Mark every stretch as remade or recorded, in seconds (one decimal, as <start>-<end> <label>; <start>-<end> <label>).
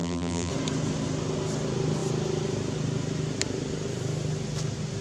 0.0-0.5 remade; 0.5-5.0 recorded